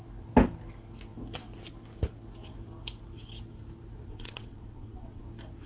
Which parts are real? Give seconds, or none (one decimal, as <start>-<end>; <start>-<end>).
0.0-4.1; 5.2-5.7